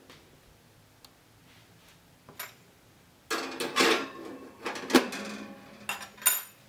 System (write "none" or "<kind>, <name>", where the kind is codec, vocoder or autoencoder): none